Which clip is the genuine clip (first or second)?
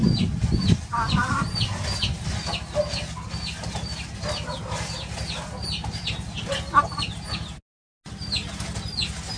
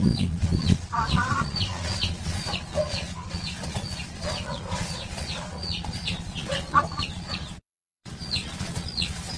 first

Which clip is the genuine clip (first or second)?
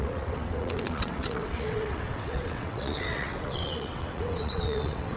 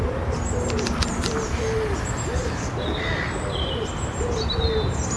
second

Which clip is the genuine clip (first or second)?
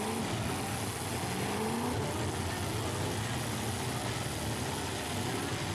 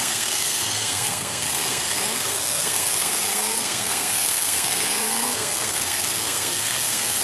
first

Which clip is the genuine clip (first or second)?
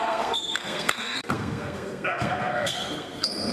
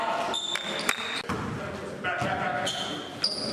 second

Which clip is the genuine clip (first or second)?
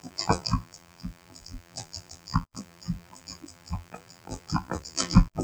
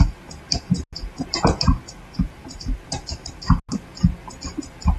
second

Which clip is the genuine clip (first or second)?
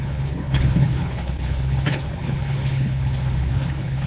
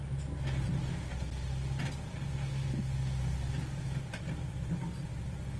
second